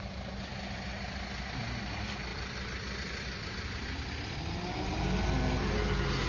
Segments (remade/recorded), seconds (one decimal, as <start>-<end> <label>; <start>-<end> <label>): 0.0-2.3 recorded; 2.3-4.4 remade; 4.4-6.3 recorded